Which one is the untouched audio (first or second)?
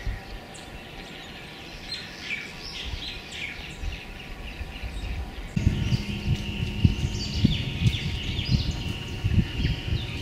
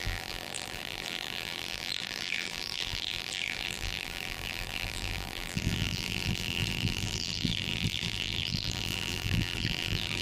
first